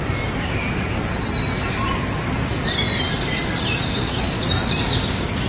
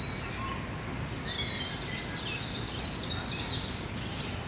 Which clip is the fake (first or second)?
first